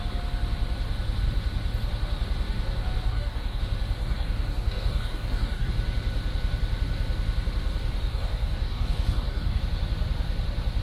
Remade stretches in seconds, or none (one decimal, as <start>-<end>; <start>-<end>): 3.1-3.6; 4.0-5.7; 8.1-9.6